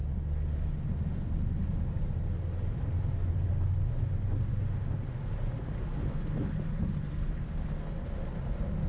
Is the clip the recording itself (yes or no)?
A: yes